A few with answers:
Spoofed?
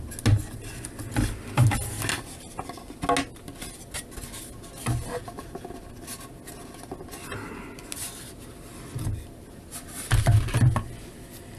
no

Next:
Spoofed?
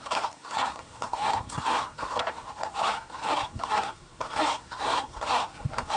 yes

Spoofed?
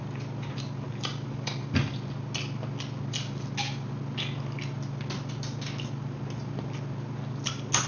no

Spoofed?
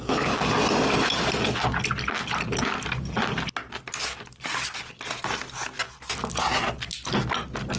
no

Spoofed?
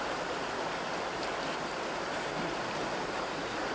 no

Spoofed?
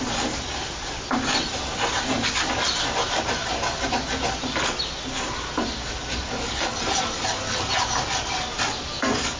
no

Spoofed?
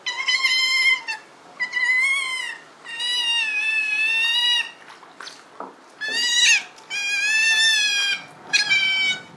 no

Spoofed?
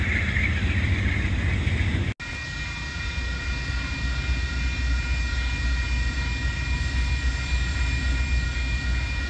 no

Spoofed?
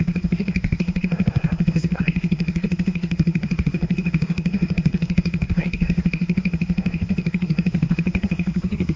yes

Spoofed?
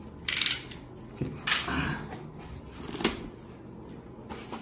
no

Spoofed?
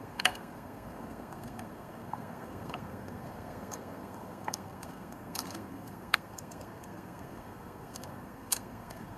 yes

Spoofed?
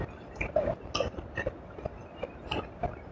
no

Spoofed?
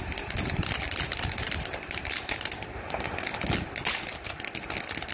no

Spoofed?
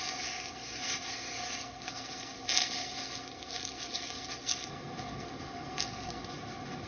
yes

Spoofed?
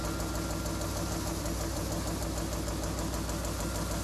no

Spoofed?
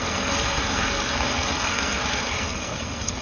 yes